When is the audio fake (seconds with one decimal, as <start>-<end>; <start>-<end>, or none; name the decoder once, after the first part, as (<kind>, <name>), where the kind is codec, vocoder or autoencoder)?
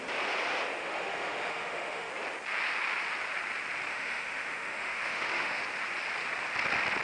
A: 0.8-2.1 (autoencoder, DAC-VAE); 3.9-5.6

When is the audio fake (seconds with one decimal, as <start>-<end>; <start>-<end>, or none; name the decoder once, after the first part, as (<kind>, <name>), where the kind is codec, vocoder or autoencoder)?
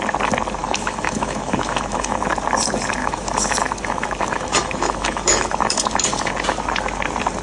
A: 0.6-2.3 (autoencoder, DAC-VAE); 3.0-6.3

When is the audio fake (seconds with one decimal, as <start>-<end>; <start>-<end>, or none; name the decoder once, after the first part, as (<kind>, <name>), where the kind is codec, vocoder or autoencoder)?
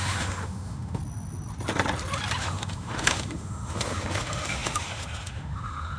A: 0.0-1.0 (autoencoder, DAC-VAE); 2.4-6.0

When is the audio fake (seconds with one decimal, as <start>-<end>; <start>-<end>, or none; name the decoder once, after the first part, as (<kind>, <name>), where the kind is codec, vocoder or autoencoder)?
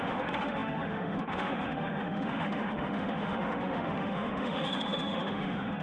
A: 0.0-5.8 (autoencoder, DAC-VAE)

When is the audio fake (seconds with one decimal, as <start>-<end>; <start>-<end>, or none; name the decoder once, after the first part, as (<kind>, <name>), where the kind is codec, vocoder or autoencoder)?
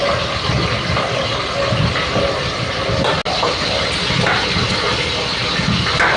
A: none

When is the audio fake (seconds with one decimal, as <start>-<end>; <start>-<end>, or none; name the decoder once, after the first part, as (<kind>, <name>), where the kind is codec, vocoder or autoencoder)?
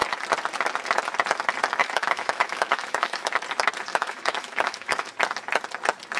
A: 1.8-3.3 (autoencoder, DAC-VAE); 3.9-5.1